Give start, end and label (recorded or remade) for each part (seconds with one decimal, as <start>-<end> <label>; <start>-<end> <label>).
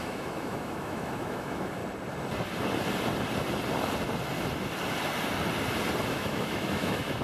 0.0-1.8 remade; 1.8-6.1 recorded; 6.1-7.2 remade